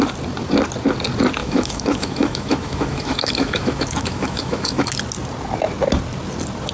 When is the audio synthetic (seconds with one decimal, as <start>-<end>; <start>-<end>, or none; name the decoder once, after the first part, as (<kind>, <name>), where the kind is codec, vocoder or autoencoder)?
1.4-4.9 (autoencoder, DAC-VAE)